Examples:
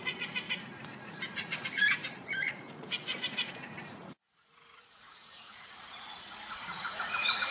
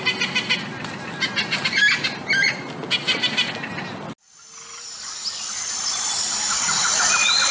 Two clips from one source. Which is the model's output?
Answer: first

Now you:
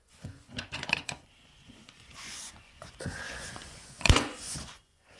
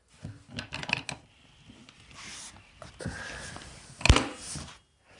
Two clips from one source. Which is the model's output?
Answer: first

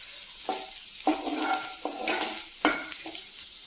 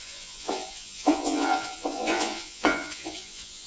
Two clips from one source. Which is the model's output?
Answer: second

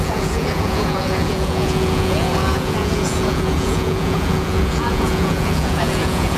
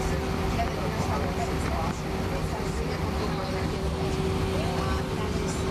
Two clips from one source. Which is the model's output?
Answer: first